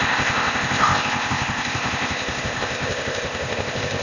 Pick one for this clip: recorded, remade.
remade